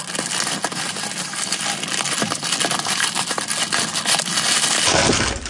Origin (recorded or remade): recorded